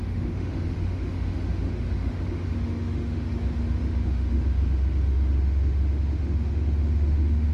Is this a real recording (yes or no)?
no